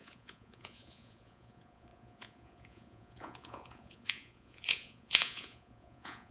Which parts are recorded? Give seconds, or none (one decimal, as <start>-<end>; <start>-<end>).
none